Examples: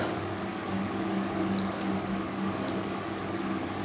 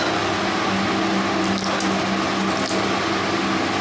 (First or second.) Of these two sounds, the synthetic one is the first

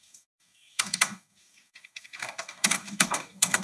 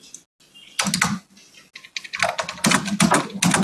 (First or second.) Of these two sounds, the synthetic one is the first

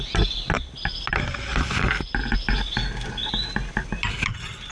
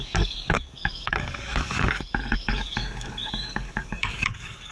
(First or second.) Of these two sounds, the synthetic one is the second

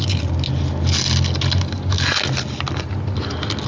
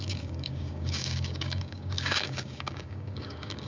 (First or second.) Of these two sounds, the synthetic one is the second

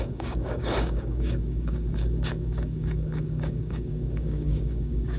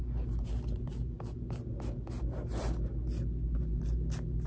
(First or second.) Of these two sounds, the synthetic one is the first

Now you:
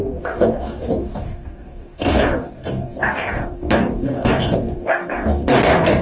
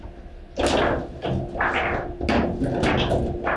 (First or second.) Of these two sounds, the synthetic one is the first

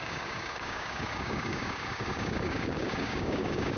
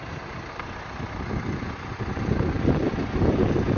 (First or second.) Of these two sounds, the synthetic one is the first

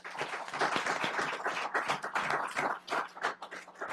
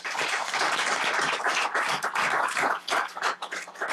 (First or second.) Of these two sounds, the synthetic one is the second